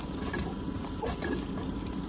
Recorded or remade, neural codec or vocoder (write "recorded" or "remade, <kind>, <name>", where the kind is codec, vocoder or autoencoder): recorded